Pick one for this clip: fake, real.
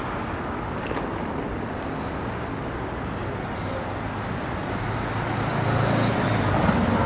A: real